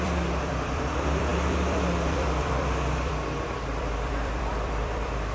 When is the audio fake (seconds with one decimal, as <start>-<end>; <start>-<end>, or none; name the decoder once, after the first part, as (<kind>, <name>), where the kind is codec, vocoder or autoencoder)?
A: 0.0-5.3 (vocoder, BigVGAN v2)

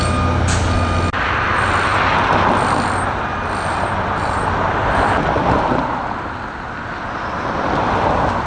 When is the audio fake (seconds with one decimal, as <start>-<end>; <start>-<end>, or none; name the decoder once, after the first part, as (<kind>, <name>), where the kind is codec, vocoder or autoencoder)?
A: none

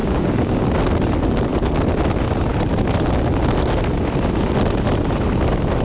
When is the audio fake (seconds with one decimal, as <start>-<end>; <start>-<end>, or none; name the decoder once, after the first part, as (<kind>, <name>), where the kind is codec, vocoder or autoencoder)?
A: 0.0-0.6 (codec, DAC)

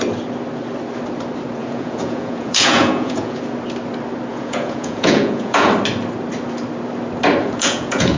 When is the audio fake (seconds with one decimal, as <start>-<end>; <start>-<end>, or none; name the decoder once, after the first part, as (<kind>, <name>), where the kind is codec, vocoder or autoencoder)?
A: 1.6-3.4 (vocoder, Vocos); 4.3-5.7; 7.4-8.2